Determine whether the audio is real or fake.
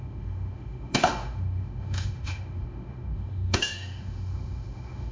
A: fake